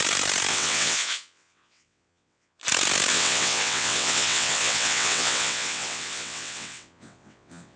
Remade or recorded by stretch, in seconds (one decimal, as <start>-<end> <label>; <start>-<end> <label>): 0.0-0.5 recorded; 0.5-2.6 remade; 2.6-3.1 recorded; 3.1-7.8 remade